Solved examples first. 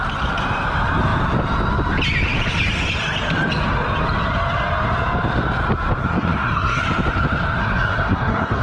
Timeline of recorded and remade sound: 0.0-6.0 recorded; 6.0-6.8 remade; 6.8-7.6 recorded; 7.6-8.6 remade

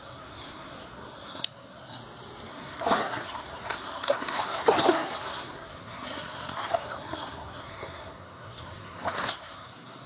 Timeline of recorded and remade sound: 0.0-2.0 remade; 2.0-2.5 recorded; 2.5-10.1 remade

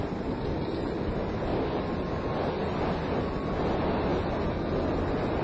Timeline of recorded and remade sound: 0.0-5.4 recorded

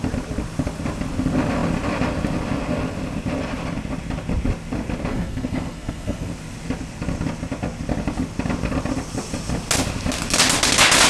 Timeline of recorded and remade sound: 0.0-5.1 recorded; 5.1-6.3 remade; 6.3-11.1 recorded

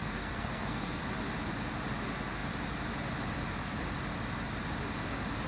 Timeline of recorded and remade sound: 0.0-1.0 remade; 1.0-5.5 recorded